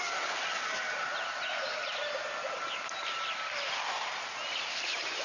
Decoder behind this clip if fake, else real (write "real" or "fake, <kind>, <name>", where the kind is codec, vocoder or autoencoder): real